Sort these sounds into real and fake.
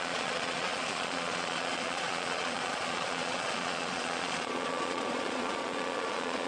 fake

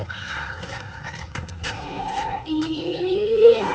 fake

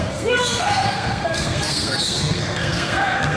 fake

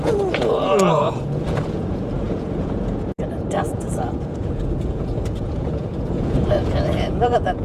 fake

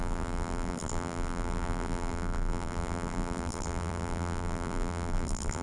fake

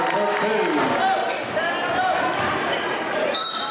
real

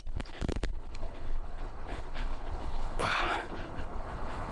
fake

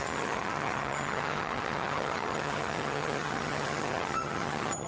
fake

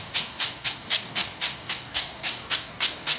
fake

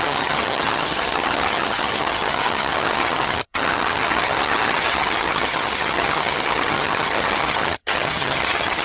fake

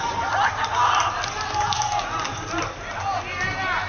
real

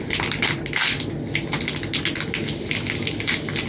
real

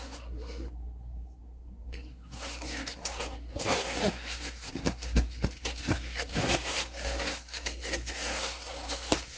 fake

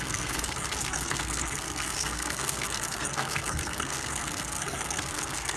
fake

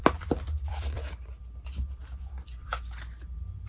fake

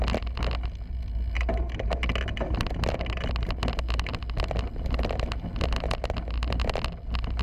real